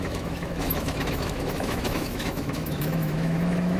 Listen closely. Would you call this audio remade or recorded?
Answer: remade